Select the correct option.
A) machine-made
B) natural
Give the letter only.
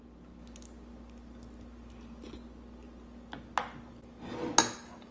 B